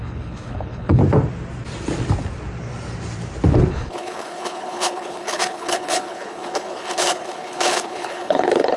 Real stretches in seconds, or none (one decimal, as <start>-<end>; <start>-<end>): 1.0-3.7